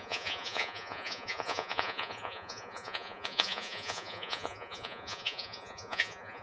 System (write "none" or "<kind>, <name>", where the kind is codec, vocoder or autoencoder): vocoder, Vocos